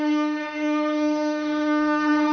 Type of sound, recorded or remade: remade